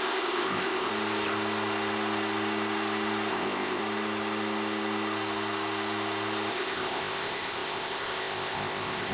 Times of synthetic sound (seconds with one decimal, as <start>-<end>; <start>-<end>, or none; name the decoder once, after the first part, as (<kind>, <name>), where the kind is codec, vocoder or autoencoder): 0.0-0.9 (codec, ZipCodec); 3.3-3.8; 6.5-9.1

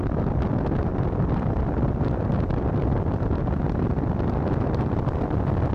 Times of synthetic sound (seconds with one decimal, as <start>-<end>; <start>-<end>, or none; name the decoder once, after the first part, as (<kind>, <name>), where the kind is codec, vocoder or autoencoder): 0.9-2.2 (vocoder, BigVGAN v2); 2.8-3.6

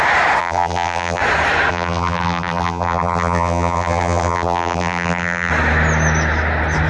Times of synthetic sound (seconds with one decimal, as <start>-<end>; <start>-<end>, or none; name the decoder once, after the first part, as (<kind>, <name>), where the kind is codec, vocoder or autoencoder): 0.4-1.2 (vocoder, BigVGAN v2); 1.7-5.5

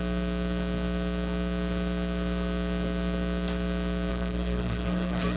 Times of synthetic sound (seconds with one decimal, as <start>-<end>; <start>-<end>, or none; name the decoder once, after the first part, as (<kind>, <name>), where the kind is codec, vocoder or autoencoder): 4.1-5.4 (codec, SNAC)

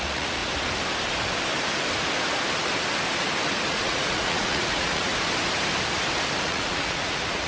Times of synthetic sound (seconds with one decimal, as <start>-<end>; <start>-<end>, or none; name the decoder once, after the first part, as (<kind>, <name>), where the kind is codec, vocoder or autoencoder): 0.0-0.4 (vocoder, Vocos); 3.7-5.1; 6.4-7.5